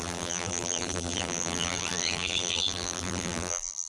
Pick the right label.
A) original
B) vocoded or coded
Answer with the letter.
B